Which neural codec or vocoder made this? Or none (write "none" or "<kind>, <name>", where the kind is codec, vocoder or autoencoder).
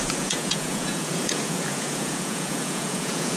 vocoder, Vocos